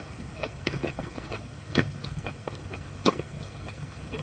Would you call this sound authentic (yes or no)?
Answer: no